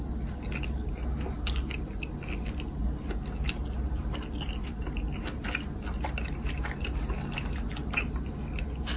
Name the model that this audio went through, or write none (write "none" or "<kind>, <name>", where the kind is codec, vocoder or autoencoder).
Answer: none